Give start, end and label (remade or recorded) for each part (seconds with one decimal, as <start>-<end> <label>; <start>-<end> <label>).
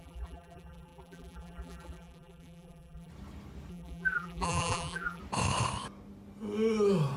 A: 0.0-3.1 remade; 3.1-3.7 recorded; 3.7-5.2 remade; 5.2-7.2 recorded